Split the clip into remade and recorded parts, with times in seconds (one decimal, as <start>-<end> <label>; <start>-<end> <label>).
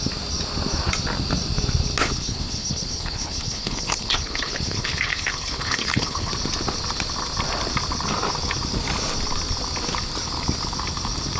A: 0.0-2.0 recorded; 2.0-6.3 remade; 6.3-11.4 recorded